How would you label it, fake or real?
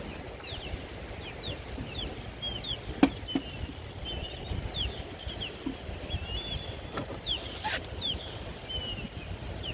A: real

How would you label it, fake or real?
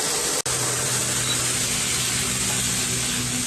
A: real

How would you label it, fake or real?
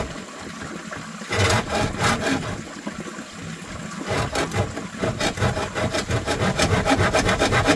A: real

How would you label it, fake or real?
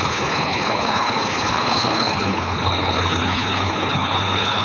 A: fake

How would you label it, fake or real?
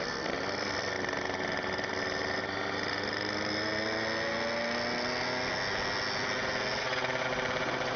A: real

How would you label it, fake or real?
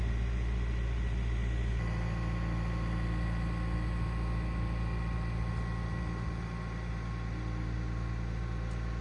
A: real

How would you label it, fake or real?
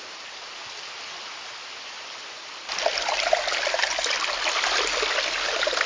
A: real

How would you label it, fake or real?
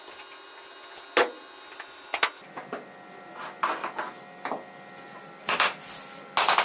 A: real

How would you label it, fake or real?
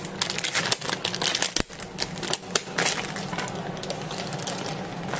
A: real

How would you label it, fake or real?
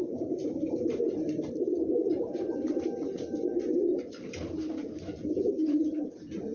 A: fake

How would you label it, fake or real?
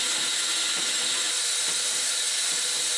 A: real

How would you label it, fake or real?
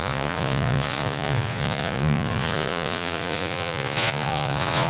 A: fake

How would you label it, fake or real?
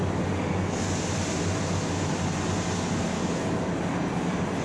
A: real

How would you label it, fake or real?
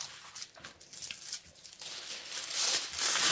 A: real